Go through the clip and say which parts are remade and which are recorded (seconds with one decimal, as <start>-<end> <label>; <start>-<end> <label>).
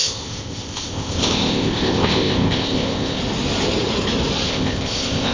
0.0-3.2 remade; 3.2-4.5 recorded; 4.5-5.3 remade